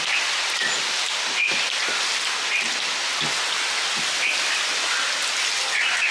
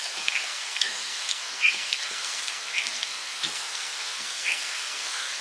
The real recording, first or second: first